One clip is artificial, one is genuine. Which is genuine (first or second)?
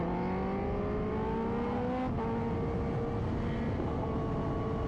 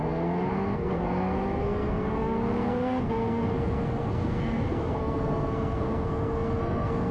first